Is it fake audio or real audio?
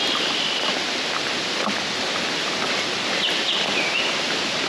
real